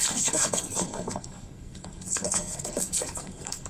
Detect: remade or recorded remade